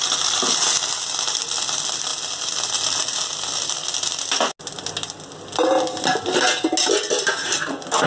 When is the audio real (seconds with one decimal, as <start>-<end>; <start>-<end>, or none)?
0.0-8.1